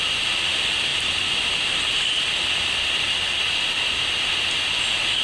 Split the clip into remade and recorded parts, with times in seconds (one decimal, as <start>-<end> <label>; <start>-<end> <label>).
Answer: 0.0-0.9 recorded; 0.9-3.4 remade; 3.4-5.2 recorded